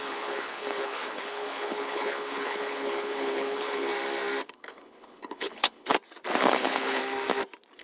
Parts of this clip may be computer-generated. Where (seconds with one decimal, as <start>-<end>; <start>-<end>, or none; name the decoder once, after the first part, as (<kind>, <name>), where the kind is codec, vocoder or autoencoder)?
0.0-3.9 (codec, HILCodec); 4.5-5.9; 6.4-7.0